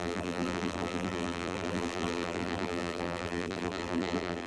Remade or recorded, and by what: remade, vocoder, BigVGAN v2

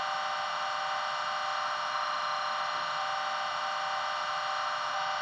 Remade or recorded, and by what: recorded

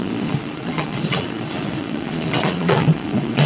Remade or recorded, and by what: remade, vocoder, Vocos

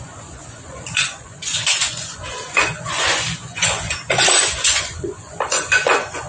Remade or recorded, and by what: remade, vocoder, Vocos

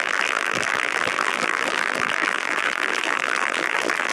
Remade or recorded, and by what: remade, vocoder, BigVGAN v2